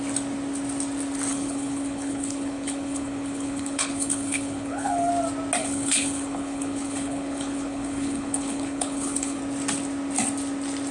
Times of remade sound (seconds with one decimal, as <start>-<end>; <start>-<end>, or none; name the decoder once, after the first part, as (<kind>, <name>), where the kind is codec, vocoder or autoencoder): 1.3-5.1 (codec, HILCodec); 5.6-9.4